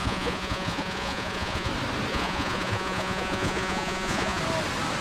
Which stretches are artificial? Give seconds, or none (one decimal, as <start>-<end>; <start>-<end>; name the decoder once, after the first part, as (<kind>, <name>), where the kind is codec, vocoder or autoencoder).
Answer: 0.0-1.7 (vocoder, Vocos); 2.1-4.4